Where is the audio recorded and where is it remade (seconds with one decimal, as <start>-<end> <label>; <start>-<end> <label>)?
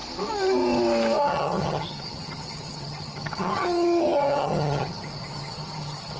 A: 0.0-1.2 recorded; 1.2-6.2 remade